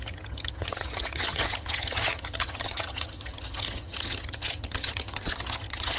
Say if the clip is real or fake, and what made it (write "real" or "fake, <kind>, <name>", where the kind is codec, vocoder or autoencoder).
fake, vocoder, HiFi-GAN